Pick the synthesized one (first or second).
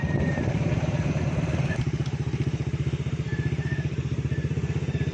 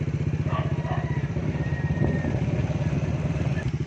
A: first